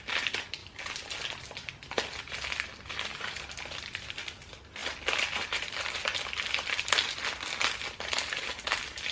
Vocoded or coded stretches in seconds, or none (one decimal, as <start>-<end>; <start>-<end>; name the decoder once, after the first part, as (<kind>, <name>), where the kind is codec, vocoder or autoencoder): none